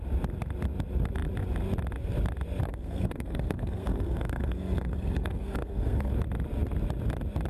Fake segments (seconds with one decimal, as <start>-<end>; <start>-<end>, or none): 2.7-6.1